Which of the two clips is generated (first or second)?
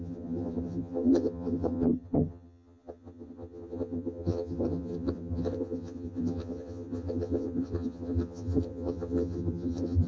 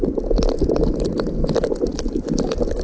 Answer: first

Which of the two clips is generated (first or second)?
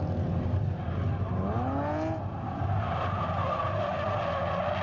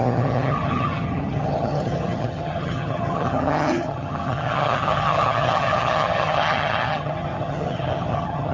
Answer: second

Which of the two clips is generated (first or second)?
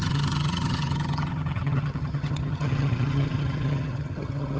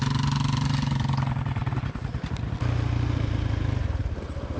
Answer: first